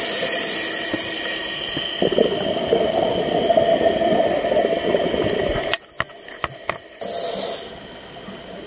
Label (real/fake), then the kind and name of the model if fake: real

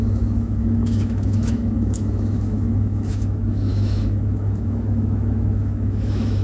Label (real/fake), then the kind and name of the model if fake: fake, autoencoder, DAC-VAE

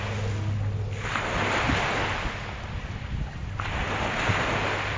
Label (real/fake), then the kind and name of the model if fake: real